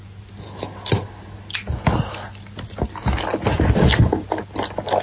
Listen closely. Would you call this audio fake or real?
real